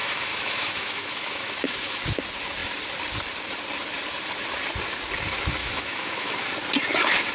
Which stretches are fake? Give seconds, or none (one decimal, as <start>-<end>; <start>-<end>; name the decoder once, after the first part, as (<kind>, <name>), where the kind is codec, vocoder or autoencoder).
0.0-2.0 (autoencoder, DAC-VAE); 5.6-6.4